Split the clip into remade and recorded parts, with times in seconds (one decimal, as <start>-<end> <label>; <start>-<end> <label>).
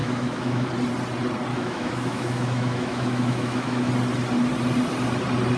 0.0-0.7 remade; 0.7-1.5 recorded; 1.5-3.9 remade; 3.9-5.6 recorded